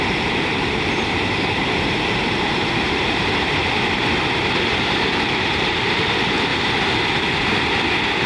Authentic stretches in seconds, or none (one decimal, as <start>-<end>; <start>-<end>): 3.6-4.4; 6.5-8.3